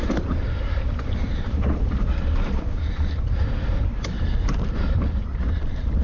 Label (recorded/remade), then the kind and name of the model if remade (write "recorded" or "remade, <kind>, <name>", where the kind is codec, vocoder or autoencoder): remade, vocoder, BigVGAN v2